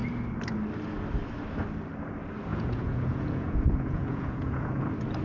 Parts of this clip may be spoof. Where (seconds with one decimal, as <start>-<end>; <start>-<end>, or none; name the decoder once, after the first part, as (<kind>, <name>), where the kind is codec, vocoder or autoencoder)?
2.5-4.8 (vocoder, Vocos)